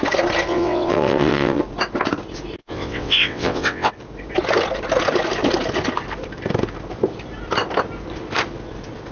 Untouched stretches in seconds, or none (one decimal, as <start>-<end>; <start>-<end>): 0.0-0.5; 1.6-2.6; 3.9-9.1